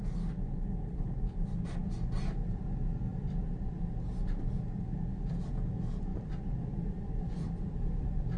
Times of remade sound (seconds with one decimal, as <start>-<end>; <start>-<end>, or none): 3.1-3.9; 6.1-8.4